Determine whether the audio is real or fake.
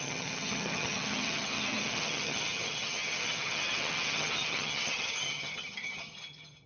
fake